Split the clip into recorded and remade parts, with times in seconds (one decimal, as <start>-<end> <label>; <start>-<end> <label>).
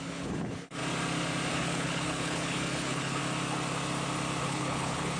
0.0-0.8 remade; 0.8-1.5 recorded; 1.5-3.2 remade; 3.2-4.4 recorded; 4.4-5.2 remade